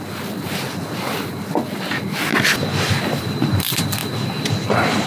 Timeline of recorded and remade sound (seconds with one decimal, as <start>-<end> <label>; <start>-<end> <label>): 0.0-5.1 recorded